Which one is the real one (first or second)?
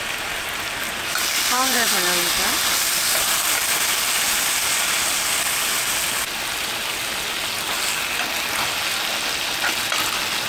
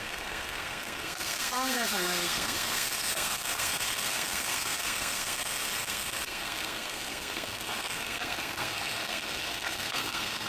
first